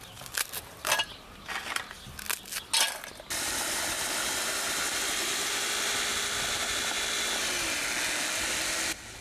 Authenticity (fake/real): real